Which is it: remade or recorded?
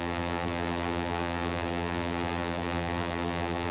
remade